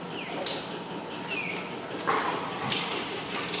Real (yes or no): yes